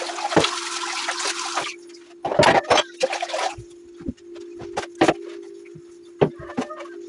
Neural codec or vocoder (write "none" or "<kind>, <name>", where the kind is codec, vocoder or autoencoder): none